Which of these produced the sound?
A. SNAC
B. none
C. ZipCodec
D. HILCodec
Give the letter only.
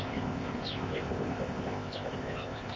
C